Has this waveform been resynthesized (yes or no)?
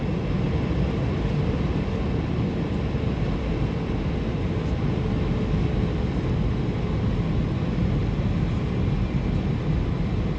no